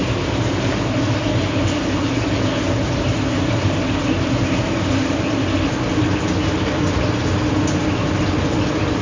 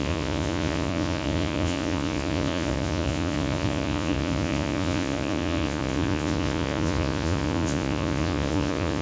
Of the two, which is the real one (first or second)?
first